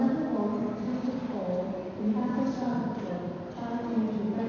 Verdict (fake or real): real